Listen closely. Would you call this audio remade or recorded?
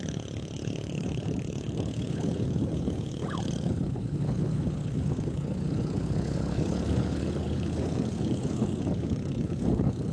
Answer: remade